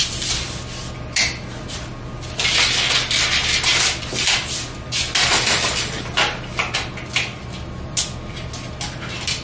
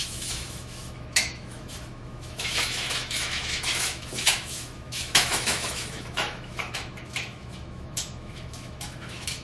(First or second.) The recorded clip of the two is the first